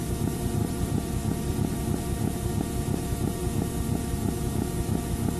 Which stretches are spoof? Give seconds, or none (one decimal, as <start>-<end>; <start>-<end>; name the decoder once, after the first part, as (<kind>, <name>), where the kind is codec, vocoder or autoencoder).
0.6-1.8 (vocoder, BigVGAN v2)